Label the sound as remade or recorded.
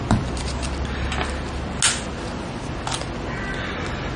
recorded